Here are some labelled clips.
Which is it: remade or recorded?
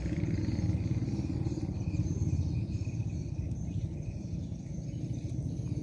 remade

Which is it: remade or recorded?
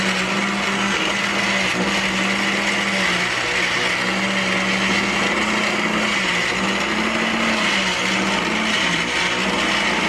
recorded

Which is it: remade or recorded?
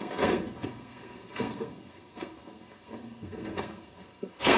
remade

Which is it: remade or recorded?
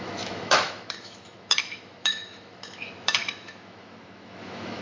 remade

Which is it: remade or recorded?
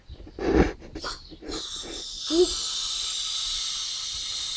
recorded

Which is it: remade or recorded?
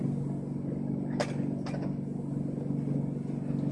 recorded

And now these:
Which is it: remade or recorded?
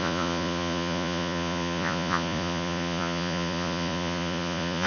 remade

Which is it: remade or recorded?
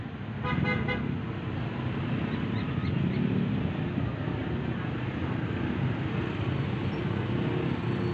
recorded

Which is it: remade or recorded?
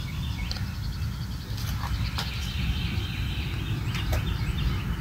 recorded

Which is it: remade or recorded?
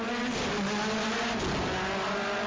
recorded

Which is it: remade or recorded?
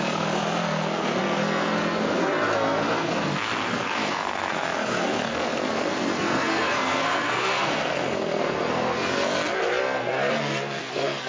remade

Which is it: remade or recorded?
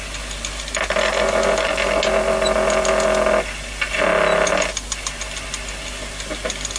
recorded